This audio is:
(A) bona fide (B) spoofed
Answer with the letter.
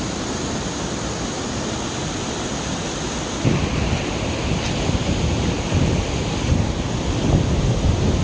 A